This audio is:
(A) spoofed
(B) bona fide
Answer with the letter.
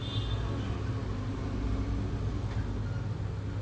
B